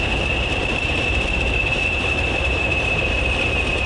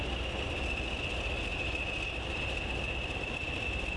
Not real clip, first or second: first